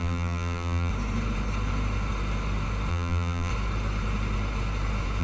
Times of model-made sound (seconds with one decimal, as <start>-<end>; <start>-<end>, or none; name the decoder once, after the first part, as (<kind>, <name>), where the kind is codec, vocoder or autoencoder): 0.0-0.9 (vocoder, BigVGAN v2); 2.9-3.5